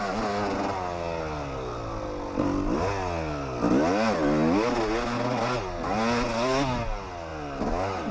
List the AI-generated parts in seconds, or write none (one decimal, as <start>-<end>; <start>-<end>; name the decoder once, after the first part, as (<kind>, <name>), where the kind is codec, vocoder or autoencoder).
none